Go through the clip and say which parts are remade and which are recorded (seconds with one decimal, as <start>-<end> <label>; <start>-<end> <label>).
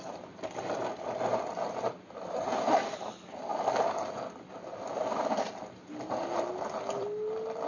0.0-1.3 remade; 1.3-2.7 recorded; 2.7-7.7 remade